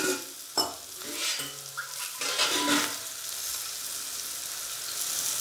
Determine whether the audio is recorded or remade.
recorded